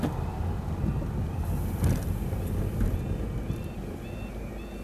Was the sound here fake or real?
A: real